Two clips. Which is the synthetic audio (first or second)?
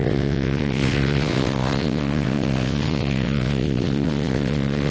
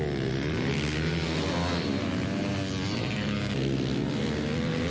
first